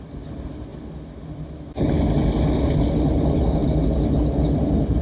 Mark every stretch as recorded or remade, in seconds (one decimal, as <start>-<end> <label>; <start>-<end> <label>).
0.0-5.0 recorded